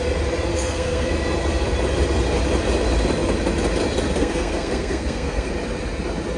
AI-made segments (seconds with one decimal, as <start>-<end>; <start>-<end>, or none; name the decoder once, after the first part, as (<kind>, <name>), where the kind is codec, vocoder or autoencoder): 0.5-1.1 (codec, SNAC); 4.2-5.5